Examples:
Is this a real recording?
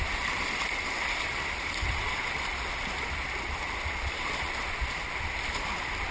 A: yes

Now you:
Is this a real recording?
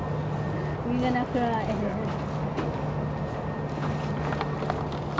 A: yes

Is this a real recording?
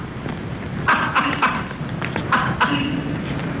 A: yes